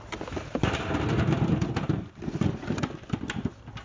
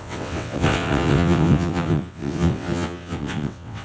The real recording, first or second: first